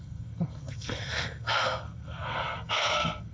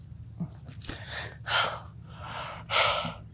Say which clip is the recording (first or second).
second